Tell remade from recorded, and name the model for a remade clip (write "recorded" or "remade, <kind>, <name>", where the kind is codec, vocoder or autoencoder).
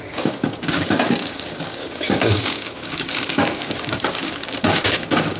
remade, codec, DAC